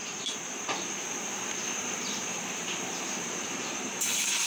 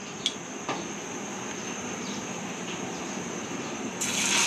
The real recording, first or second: second